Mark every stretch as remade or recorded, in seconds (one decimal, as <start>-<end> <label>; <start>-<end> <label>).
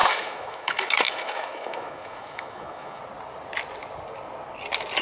0.0-3.0 remade; 3.0-5.0 recorded